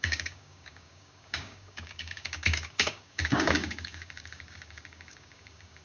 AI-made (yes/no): yes